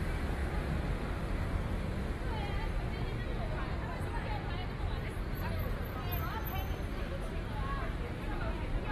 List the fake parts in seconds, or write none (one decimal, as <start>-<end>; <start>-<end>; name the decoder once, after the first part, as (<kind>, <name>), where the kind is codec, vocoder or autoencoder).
6.9-8.4 (vocoder, BigVGAN v2)